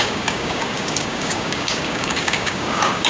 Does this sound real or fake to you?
fake